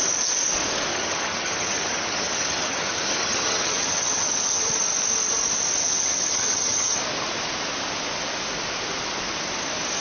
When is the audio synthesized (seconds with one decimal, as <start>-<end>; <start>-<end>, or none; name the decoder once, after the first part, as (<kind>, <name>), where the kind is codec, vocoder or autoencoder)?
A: 0.9-4.7 (vocoder, HiFi-GAN); 5.8-7.0